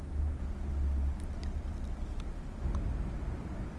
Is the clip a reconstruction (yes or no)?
no